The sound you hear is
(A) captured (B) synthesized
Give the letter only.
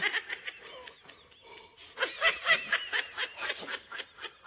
A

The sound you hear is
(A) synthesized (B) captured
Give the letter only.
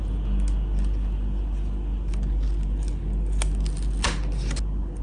B